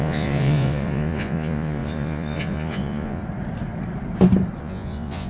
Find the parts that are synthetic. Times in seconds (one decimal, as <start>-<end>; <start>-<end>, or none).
0.0-3.2; 4.6-5.3